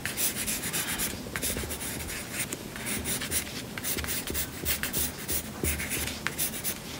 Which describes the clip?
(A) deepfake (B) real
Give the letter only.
B